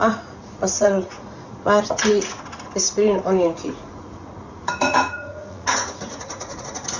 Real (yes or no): no